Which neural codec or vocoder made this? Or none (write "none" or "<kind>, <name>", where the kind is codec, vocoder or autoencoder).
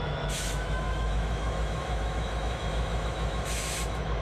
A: autoencoder, DAC-VAE